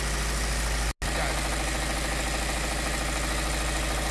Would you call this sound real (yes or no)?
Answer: yes